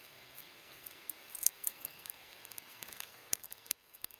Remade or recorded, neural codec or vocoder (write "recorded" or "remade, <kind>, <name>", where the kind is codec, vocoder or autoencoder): remade, codec, SNAC